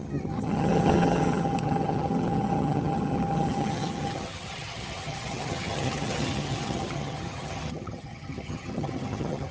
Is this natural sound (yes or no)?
no